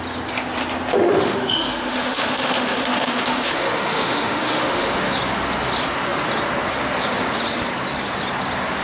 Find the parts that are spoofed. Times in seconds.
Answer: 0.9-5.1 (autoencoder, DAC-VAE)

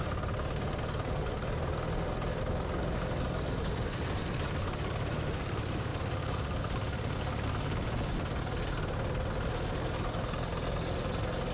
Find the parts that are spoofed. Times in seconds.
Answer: none

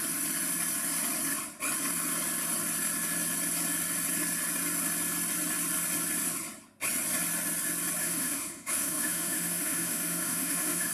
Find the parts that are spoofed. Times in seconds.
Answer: 8.0-10.9 (autoencoder, DAC-VAE)

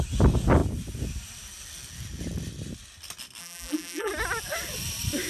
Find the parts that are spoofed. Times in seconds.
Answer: 3.4-4.1 (vocoder, BigVGAN v2)

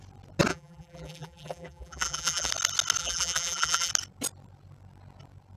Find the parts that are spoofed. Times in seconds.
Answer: 0.5-2.5 (vocoder, BigVGAN v2); 3.0-3.9

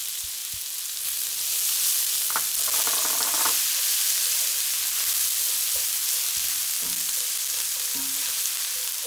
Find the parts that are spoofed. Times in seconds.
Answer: none